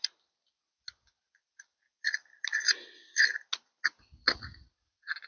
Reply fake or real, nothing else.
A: real